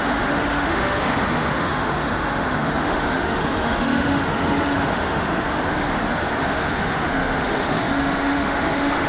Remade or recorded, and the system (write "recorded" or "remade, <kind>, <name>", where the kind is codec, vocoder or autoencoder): remade, autoencoder, DAC-VAE